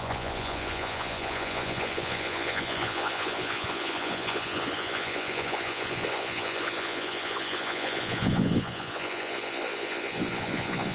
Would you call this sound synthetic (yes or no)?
yes